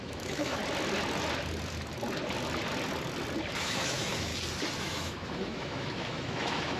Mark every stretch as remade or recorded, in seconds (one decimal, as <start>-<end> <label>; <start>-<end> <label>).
0.0-0.6 remade; 0.6-3.6 recorded; 3.6-4.3 remade; 4.3-4.8 recorded; 4.8-6.8 remade

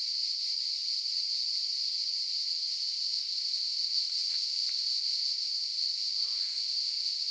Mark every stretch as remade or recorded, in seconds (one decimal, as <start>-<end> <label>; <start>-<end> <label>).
0.0-2.7 recorded; 2.7-7.3 remade

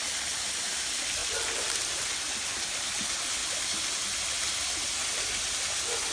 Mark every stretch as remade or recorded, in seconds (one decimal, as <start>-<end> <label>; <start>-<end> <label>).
0.0-6.1 recorded

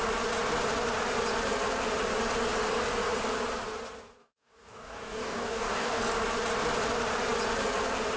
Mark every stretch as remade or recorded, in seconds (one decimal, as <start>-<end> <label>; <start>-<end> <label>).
0.0-4.2 recorded; 4.2-6.0 remade; 6.0-8.2 recorded

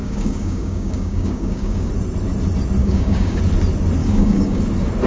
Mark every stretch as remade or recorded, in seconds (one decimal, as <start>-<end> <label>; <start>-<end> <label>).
0.0-1.9 remade; 1.9-2.8 recorded; 2.8-3.4 remade; 3.4-4.0 recorded; 4.0-4.6 remade; 4.6-5.1 recorded

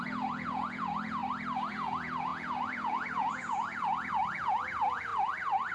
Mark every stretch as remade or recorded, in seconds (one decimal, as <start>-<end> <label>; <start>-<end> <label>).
0.0-1.2 remade; 1.2-1.7 recorded; 1.7-5.1 remade; 5.1-5.7 recorded

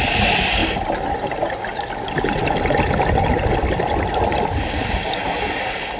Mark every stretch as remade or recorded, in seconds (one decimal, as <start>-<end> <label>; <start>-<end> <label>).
0.0-6.0 recorded